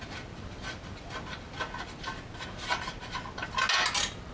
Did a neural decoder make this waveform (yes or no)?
no